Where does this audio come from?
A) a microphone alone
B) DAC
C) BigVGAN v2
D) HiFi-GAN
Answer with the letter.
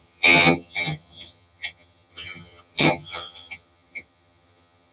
D